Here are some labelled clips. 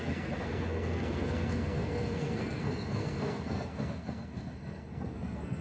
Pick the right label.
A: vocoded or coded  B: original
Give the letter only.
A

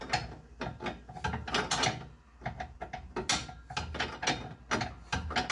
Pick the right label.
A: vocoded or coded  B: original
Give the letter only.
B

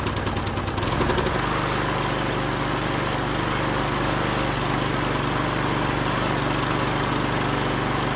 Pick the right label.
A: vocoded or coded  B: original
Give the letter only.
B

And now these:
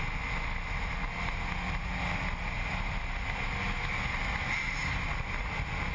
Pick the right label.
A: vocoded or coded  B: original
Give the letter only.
B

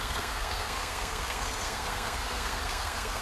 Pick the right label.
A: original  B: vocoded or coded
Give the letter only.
B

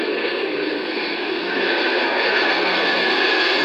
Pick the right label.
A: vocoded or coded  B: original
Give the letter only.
A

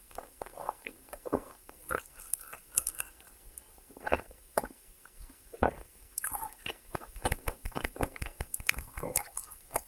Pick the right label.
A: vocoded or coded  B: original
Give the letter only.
A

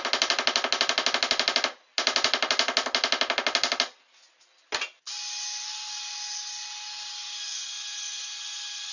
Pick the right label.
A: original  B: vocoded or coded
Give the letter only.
A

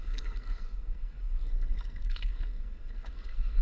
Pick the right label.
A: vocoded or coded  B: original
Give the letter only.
A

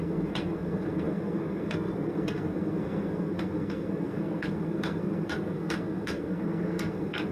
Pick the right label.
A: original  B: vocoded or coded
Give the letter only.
B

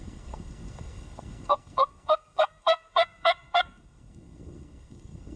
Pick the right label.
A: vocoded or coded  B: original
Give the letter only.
A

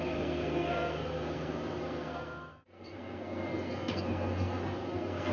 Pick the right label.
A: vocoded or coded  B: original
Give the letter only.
A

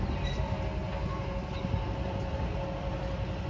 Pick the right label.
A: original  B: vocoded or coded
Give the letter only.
A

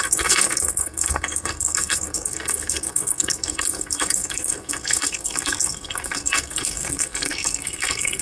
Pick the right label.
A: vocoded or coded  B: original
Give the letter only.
A